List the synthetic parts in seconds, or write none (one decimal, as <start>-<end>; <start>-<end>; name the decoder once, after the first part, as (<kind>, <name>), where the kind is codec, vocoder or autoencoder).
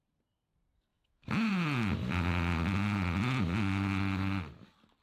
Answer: 0.9-1.5 (autoencoder, DAC-VAE)